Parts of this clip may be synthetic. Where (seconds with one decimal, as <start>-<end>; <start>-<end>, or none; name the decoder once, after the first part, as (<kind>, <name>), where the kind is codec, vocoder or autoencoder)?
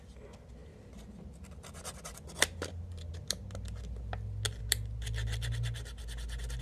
none